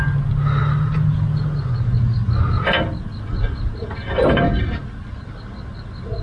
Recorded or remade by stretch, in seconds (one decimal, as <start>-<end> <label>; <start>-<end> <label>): 0.0-6.2 recorded